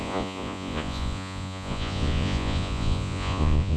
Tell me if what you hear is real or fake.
fake